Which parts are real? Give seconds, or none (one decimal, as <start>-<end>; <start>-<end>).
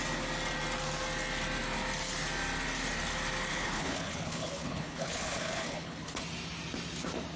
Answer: 0.0-3.5; 6.2-7.4